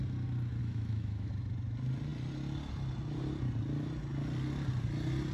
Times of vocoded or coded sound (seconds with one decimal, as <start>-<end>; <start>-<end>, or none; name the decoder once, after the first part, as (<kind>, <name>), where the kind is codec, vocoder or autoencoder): 0.6-1.3 (autoencoder, DAC-VAE)